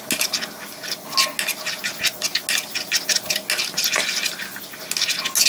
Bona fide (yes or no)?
yes